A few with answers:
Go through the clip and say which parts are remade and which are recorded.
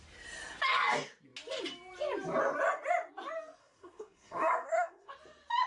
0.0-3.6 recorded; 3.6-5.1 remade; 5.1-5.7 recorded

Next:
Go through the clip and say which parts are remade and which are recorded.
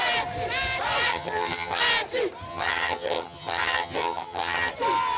0.0-1.1 recorded; 1.1-1.8 remade; 1.8-2.5 recorded; 2.5-4.7 remade; 4.7-5.2 recorded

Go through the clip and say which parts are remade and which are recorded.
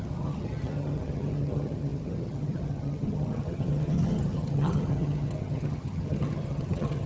0.0-7.1 remade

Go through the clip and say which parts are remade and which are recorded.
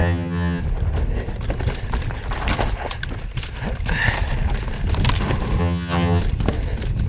0.0-0.6 remade; 0.6-5.6 recorded; 5.6-6.2 remade; 6.2-7.1 recorded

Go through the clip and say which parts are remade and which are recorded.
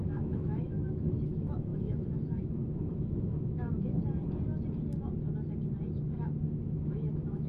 0.0-4.0 remade; 4.0-6.6 recorded; 6.6-7.5 remade